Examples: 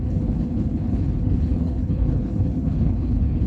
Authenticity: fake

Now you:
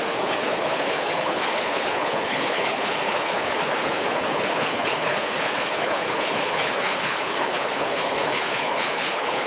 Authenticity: fake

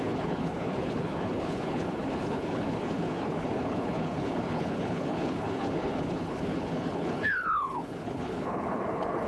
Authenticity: fake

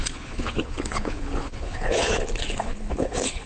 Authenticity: fake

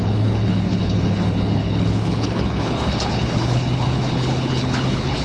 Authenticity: fake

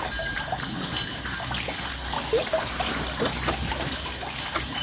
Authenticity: real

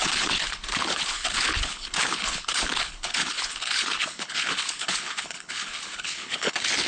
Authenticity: fake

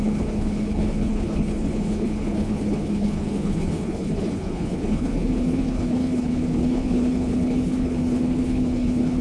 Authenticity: fake